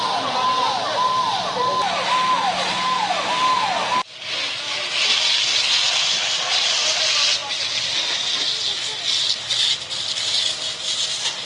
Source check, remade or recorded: recorded